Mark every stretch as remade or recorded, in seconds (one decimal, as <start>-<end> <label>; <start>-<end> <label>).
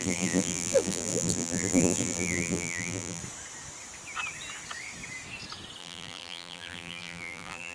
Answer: 0.0-3.2 remade; 3.2-5.8 recorded; 5.8-7.7 remade